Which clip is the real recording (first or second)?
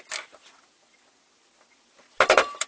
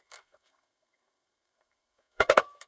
first